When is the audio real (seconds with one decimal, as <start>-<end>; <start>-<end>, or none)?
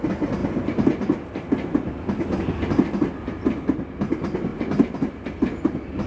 0.0-6.1